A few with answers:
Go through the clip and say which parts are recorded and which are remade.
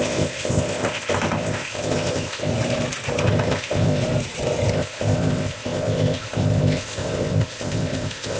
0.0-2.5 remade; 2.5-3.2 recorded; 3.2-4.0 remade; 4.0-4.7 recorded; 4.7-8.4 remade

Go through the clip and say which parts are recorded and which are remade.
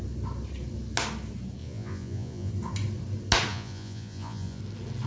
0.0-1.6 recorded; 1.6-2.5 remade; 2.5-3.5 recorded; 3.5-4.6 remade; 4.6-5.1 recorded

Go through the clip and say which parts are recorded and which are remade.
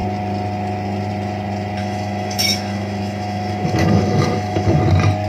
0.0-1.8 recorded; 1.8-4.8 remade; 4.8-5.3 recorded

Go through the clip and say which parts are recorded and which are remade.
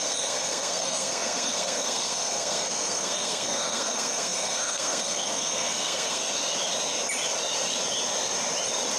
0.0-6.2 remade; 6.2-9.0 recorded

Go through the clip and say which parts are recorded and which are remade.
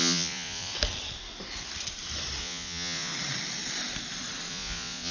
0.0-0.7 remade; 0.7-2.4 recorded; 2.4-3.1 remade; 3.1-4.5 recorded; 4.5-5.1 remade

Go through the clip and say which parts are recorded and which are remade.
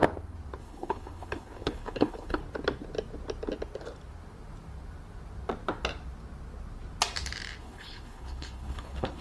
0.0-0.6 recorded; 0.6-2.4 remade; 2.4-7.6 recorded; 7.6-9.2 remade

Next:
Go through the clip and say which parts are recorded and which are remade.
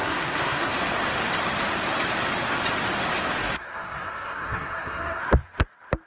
0.0-0.7 remade; 0.7-3.4 recorded; 3.4-5.2 remade; 5.2-6.1 recorded